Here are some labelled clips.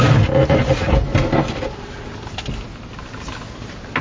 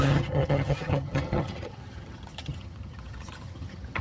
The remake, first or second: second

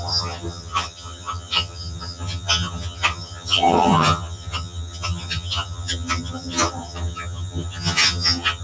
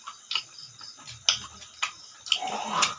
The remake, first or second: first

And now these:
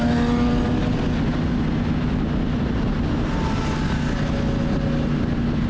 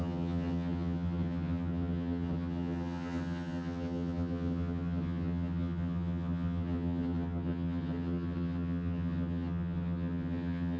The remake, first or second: second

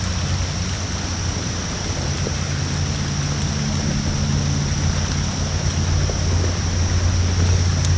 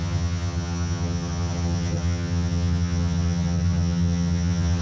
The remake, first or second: second